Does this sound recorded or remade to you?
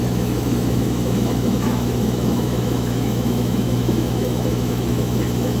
remade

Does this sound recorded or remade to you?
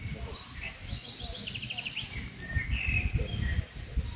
recorded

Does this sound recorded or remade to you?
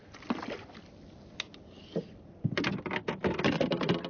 recorded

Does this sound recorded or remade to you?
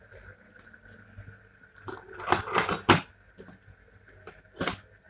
recorded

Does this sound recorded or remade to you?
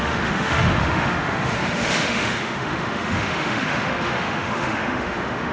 remade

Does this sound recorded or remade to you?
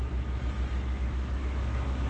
remade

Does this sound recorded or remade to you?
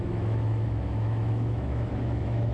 remade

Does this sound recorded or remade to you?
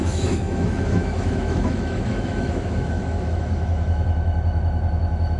remade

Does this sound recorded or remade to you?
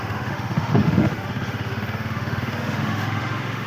remade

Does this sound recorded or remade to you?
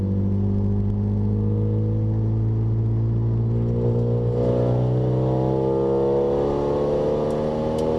recorded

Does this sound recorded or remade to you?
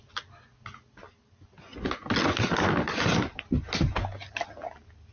recorded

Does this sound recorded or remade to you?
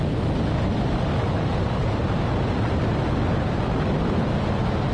recorded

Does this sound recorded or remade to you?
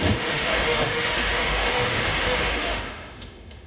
remade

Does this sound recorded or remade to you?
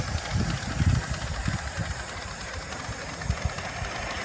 recorded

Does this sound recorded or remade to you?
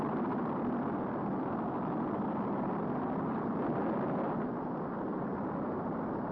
recorded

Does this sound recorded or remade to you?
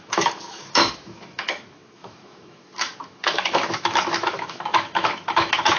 remade